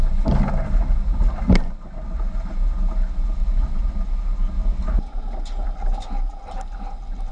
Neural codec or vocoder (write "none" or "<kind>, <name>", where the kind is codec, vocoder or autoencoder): none